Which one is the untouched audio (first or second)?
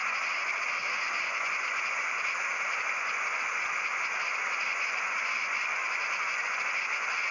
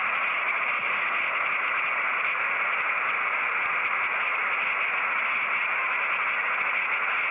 second